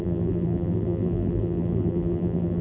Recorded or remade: remade